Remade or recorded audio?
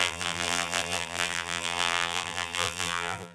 remade